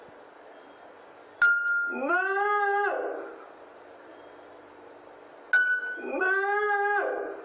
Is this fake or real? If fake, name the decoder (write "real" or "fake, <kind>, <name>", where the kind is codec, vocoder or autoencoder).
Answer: real